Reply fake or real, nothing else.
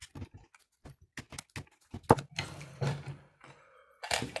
real